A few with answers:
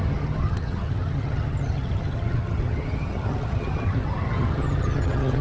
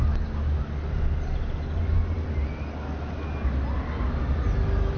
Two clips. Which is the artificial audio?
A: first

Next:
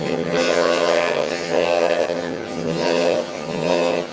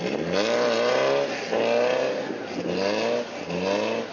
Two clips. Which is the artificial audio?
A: first